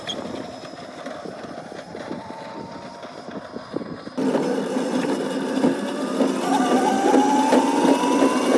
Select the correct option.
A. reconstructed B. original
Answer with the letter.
B